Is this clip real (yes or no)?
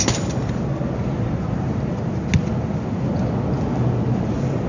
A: yes